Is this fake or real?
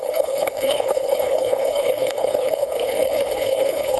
fake